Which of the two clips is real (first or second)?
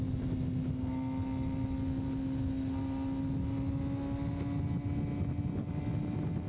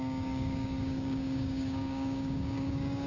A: first